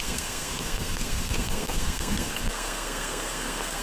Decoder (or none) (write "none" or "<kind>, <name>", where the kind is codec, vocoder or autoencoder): codec, SNAC